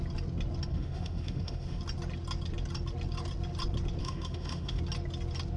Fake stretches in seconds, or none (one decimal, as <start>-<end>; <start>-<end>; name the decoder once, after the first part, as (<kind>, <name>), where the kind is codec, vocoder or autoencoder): 0.7-1.8 (autoencoder, DAC-VAE); 4.0-4.8